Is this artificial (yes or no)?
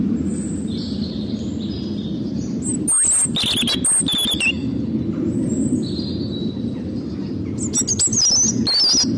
no